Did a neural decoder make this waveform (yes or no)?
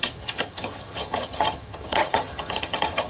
yes